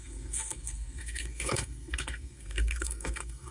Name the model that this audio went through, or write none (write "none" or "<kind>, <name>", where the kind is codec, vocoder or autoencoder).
codec, SNAC